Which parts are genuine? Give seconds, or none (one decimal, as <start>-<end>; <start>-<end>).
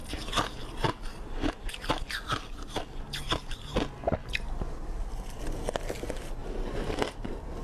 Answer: 0.0-7.6